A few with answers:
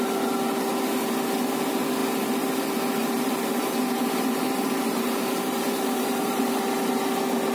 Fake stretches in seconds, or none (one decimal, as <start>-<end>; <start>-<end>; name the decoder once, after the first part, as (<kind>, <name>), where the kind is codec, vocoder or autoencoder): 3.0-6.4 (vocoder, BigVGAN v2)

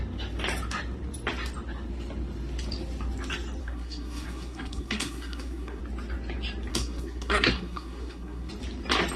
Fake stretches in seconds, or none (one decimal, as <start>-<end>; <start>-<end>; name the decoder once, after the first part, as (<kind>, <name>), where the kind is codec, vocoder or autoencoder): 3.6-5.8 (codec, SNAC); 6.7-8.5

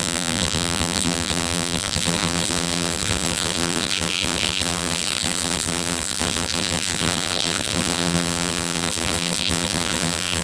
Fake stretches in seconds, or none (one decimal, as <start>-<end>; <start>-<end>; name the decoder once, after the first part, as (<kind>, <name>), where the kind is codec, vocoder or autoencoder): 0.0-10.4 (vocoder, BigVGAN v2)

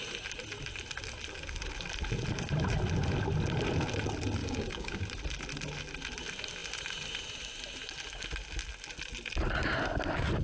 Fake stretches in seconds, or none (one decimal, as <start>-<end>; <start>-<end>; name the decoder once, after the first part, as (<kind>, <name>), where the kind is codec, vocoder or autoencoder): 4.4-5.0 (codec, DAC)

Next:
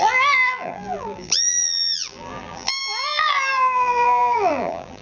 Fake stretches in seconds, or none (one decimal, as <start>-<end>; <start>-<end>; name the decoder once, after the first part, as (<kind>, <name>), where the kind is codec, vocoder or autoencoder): 0.0-5.0 (vocoder, BigVGAN v2)